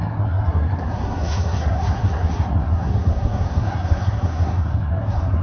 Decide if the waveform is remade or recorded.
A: remade